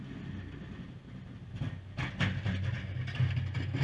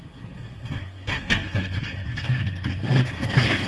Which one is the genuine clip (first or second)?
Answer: first